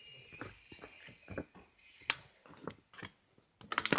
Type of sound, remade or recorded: recorded